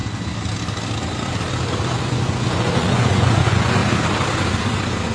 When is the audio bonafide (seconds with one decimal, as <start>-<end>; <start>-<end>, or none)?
0.0-2.0; 3.8-5.1